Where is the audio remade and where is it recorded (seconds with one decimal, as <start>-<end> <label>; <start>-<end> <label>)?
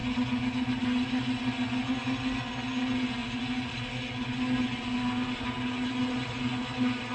0.0-7.1 recorded